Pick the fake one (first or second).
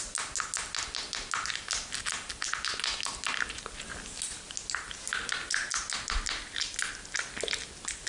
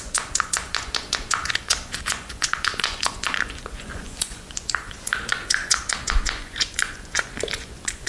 second